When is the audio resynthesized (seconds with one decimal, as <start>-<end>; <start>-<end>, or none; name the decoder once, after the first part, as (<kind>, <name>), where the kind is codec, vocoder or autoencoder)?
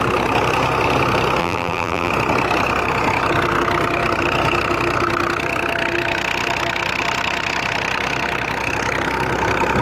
1.4-2.1 (vocoder, BigVGAN v2)